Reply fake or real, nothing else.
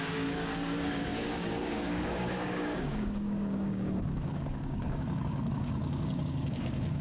fake